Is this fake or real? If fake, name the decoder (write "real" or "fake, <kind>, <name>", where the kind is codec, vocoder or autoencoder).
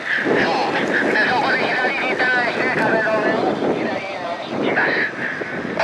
real